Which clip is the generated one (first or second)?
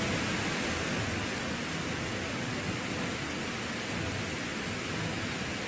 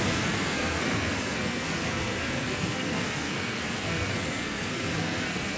second